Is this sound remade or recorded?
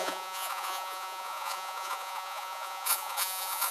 remade